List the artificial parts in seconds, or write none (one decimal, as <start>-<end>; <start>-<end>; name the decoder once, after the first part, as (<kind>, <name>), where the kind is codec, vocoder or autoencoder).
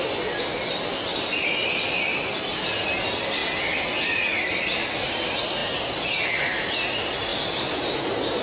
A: none